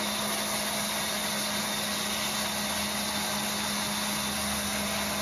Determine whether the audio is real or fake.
real